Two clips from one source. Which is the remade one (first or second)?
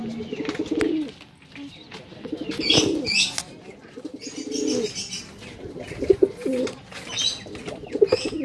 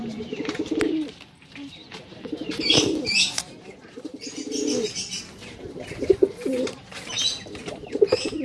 second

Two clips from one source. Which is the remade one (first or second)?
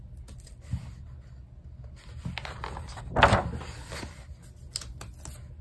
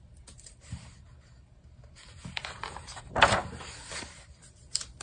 second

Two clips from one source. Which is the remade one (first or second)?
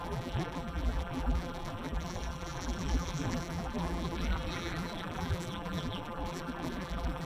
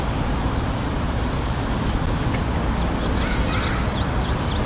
first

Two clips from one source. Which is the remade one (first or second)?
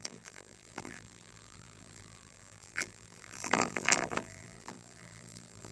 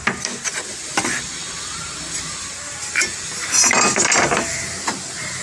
first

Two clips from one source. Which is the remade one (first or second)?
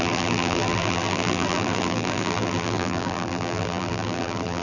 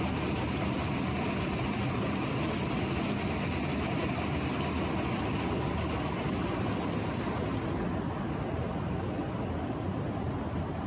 first